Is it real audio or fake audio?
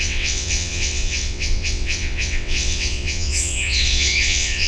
fake